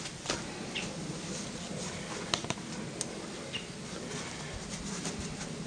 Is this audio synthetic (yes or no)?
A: no